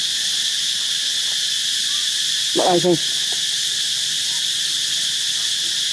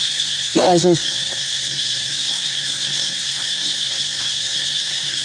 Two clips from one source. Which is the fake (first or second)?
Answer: second